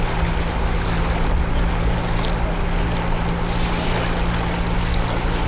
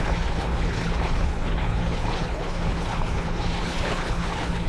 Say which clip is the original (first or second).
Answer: first